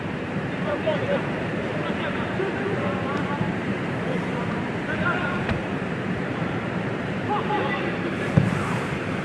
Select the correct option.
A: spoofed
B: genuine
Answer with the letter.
A